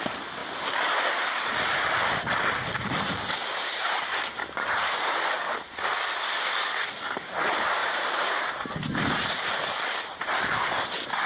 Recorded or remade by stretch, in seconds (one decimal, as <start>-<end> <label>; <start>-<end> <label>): 0.0-7.8 recorded; 7.8-10.8 remade; 10.8-11.3 recorded